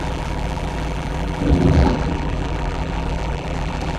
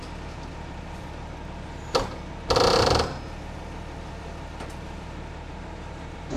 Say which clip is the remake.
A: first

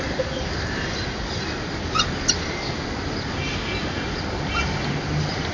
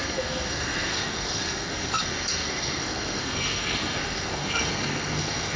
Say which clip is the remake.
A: second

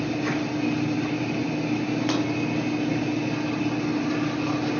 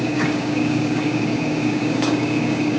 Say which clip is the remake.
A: second